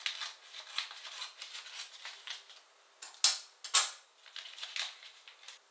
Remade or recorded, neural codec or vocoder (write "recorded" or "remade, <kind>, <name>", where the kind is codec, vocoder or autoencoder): recorded